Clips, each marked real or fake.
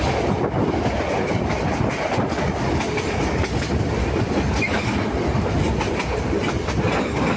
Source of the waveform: real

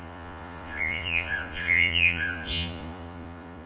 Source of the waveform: fake